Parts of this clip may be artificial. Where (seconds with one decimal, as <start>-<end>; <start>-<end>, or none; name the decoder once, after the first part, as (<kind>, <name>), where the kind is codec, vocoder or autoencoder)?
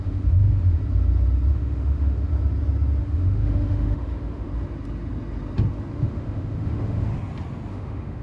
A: 0.0-0.8 (autoencoder, DAC-VAE); 1.5-2.3; 3.0-4.5; 5.9-7.1; 7.7-8.2